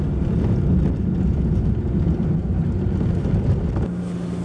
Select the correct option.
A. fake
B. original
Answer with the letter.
B